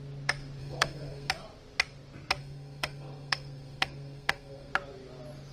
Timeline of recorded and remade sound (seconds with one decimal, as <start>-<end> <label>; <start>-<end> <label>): 0.0-0.6 recorded; 0.6-1.3 remade; 1.3-2.4 recorded; 2.4-4.7 remade; 4.7-5.5 recorded